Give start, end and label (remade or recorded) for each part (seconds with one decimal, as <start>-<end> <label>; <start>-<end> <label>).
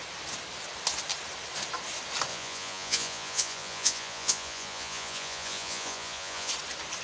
0.0-2.3 recorded; 2.3-6.5 remade; 6.5-7.0 recorded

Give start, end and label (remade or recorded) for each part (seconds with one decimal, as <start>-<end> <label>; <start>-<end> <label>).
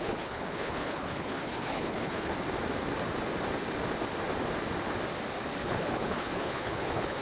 0.0-2.3 remade; 2.3-5.6 recorded; 5.6-7.2 remade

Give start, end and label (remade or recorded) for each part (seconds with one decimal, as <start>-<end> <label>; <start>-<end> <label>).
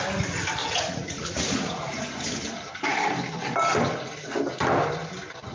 0.0-0.6 recorded; 0.6-2.4 remade; 2.4-5.5 recorded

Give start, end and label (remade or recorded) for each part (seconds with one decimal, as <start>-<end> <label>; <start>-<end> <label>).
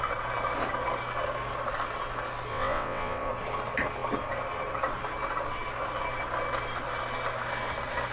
0.0-2.5 recorded; 2.5-3.3 remade; 3.3-8.1 recorded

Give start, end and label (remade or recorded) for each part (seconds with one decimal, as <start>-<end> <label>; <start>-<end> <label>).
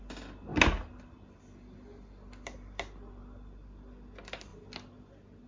0.0-5.5 recorded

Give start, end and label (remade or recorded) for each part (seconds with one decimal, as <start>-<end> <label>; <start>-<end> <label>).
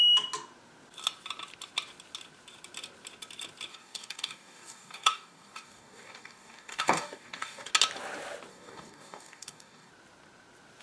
0.0-3.7 recorded; 3.7-7.7 remade; 7.7-8.5 recorded; 8.5-9.9 remade; 9.9-10.8 recorded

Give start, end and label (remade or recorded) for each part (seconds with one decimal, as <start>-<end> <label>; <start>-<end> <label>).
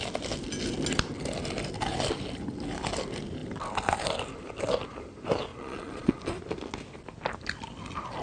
0.0-5.5 recorded; 5.5-6.2 remade; 6.2-8.2 recorded